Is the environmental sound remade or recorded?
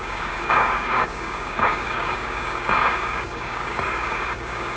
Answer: remade